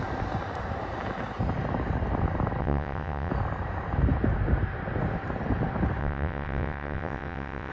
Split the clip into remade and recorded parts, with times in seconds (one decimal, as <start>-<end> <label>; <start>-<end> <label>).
0.0-2.6 recorded; 2.6-3.3 remade; 3.3-6.0 recorded; 6.0-7.7 remade